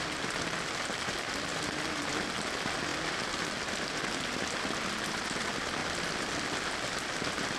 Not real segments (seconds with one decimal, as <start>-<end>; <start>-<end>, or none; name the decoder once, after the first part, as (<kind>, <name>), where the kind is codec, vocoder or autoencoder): none